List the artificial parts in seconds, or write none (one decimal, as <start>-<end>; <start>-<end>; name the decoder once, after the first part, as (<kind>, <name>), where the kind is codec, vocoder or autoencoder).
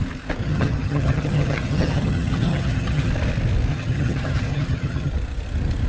0.4-3.1 (vocoder, HiFi-GAN); 3.7-5.1